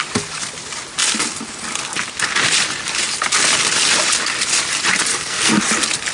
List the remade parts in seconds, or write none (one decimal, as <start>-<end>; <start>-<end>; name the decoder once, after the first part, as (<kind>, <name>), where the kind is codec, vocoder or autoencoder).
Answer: 5.1-5.6 (codec, SNAC)